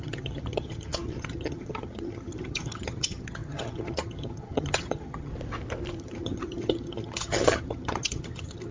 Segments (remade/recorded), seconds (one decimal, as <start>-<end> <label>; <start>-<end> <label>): 0.0-5.3 remade; 5.3-6.0 recorded; 6.0-8.7 remade